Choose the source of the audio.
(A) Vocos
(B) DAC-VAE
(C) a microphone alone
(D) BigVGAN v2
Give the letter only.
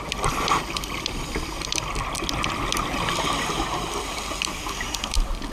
D